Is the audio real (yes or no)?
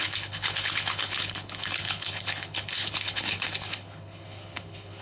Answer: no